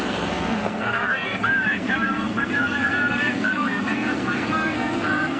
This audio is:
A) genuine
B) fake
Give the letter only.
B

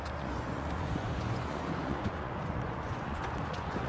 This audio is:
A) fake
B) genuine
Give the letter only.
A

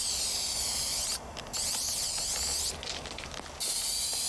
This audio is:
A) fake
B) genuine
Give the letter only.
B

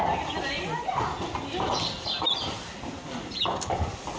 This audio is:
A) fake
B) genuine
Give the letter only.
B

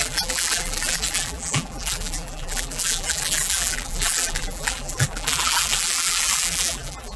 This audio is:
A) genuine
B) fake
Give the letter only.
B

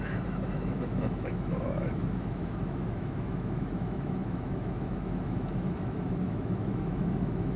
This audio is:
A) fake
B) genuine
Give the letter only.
A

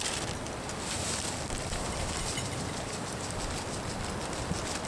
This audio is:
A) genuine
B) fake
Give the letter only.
B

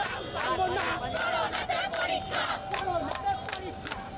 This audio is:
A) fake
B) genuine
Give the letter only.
B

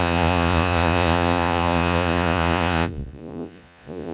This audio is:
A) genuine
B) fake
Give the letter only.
B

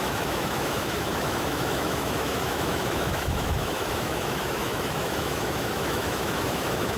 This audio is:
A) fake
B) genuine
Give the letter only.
A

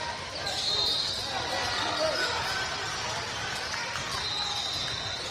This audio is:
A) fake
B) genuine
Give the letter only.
B